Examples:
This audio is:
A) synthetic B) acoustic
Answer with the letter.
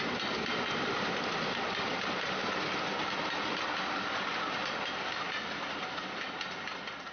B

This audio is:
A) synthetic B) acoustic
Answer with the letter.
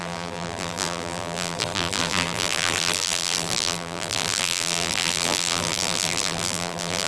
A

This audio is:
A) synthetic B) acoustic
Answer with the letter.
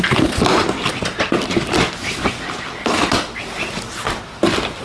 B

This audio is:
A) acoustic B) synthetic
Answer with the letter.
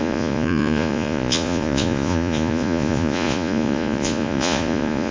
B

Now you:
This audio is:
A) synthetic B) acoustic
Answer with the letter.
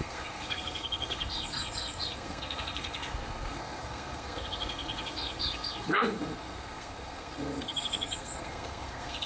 A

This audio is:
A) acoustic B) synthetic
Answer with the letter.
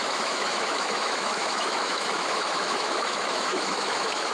B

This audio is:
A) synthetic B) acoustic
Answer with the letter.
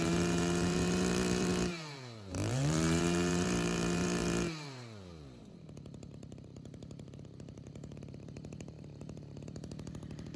A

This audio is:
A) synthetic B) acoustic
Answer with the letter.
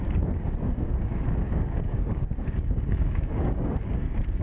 A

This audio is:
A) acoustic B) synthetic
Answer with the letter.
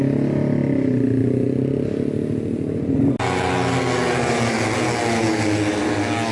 A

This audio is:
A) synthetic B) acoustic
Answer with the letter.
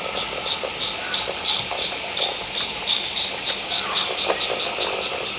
B